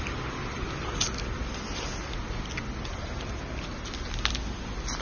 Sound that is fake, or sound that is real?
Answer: real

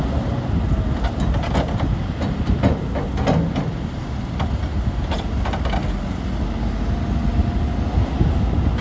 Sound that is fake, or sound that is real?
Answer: real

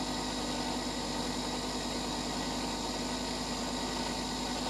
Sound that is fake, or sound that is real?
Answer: real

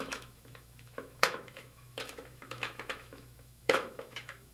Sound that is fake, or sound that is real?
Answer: fake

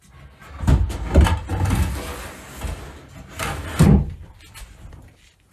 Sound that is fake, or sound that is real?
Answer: real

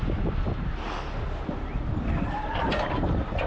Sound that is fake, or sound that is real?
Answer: real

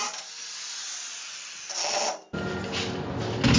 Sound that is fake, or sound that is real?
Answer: real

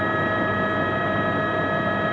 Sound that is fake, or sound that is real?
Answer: real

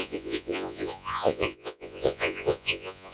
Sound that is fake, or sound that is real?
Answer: fake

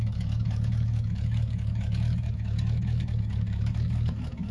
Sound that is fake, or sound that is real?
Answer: fake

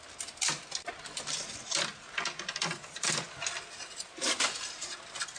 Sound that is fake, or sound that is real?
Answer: real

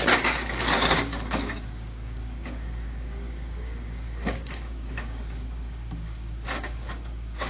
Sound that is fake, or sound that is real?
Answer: fake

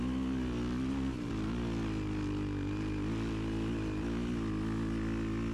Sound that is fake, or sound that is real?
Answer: real